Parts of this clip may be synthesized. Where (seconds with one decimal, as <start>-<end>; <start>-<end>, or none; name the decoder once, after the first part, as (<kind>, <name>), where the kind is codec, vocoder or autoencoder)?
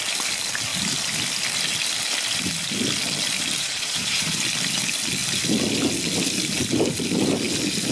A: 3.6-4.4 (vocoder, Vocos)